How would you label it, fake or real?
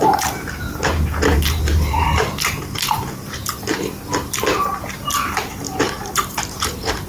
fake